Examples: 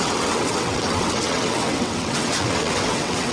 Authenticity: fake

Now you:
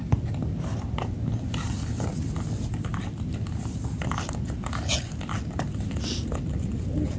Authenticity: real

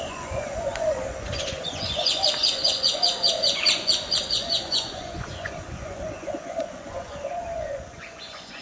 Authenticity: fake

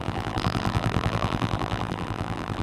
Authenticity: fake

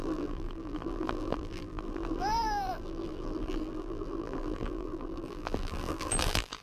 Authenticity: fake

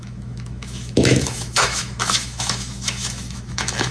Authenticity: fake